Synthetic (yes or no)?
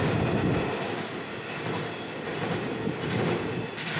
no